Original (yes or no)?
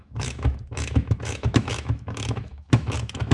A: no